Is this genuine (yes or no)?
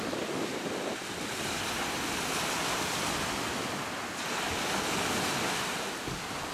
yes